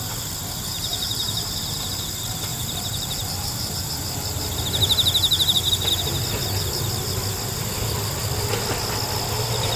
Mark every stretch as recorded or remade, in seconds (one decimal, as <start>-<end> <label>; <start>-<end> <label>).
0.0-0.7 recorded; 0.7-2.0 remade; 2.0-2.5 recorded; 2.5-3.9 remade; 3.9-9.8 recorded